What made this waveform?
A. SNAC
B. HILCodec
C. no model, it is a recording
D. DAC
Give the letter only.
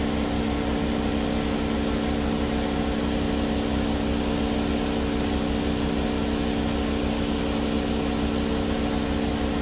C